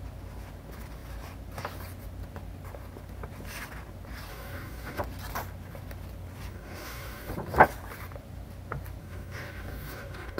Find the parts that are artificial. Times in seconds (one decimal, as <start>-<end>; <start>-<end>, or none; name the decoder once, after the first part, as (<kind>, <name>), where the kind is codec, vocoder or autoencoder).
4.3-5.0 (codec, DAC); 6.5-7.3; 9.0-10.4